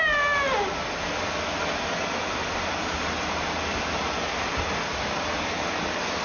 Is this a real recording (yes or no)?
yes